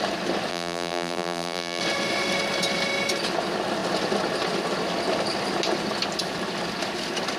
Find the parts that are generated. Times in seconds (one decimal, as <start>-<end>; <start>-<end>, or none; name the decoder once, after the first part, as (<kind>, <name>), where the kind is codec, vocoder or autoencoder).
0.5-1.8 (vocoder, BigVGAN v2)